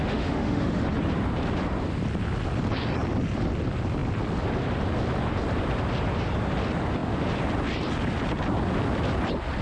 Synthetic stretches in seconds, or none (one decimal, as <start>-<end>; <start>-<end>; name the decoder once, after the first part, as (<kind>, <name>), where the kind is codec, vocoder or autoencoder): 0.0-0.8 (autoencoder, DAC-VAE)